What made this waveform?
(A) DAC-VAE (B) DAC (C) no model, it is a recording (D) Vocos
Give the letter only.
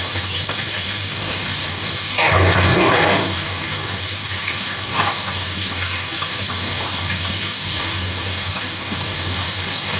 B